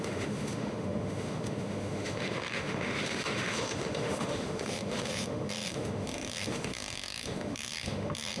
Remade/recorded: remade